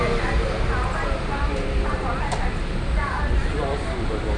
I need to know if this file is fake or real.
real